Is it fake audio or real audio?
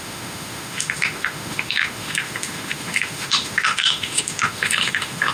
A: fake